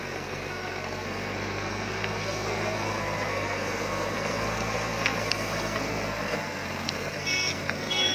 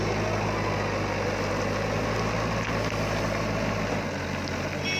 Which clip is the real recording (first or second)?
second